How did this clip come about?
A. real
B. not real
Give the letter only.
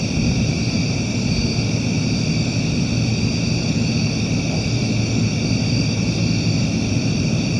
A